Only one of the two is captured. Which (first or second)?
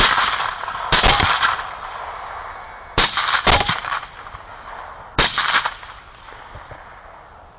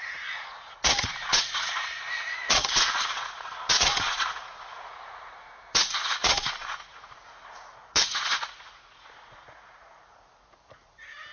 first